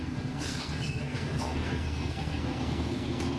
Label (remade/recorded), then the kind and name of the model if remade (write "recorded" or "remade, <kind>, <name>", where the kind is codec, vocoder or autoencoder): remade, codec, SNAC